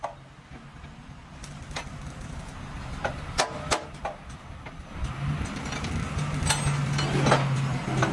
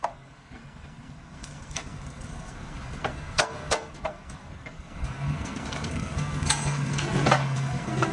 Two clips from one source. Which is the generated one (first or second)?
second